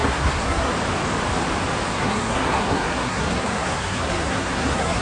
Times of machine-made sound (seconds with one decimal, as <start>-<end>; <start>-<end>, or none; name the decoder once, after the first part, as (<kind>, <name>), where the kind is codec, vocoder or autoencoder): 0.0-0.7 (codec, SNAC); 1.9-5.0